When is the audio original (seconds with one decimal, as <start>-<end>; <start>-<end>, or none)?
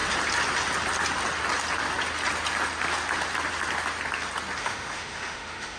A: 0.0-4.6